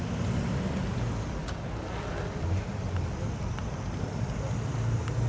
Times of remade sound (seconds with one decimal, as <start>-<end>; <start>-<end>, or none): none